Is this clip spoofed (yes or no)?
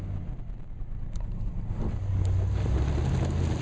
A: no